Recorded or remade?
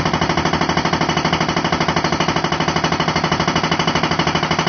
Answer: recorded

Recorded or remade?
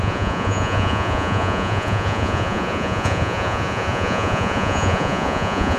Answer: remade